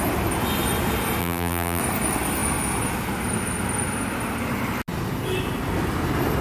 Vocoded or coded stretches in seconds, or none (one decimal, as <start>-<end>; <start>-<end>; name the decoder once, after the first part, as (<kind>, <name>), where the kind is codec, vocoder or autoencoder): 1.2-1.8 (vocoder, BigVGAN v2)